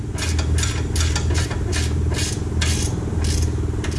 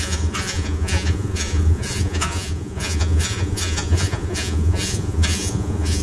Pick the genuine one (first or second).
first